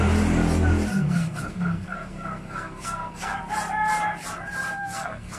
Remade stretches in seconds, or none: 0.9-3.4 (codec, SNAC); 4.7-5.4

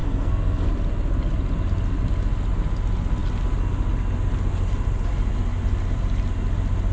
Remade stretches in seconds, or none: 0.0-0.7 (codec, SNAC)

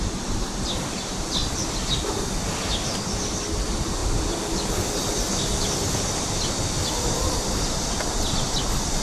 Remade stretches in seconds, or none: none

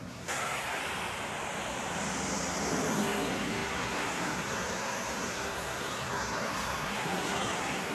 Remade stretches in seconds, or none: 0.0-0.8 (codec, SNAC); 2.9-7.9